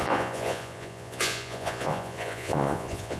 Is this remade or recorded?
remade